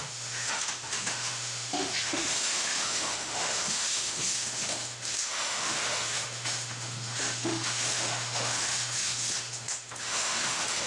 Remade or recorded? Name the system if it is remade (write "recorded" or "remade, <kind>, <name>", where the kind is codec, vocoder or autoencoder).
remade, autoencoder, DAC-VAE